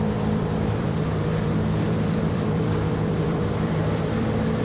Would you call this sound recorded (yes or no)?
no